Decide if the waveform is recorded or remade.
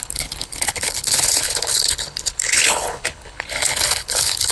remade